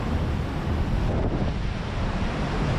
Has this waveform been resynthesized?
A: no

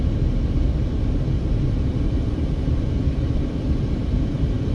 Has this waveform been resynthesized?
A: no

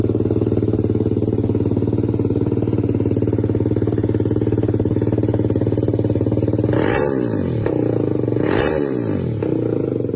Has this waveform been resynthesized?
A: no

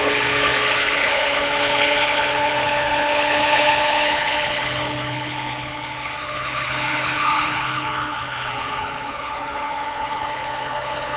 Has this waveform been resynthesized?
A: yes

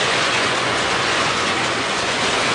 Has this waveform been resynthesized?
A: yes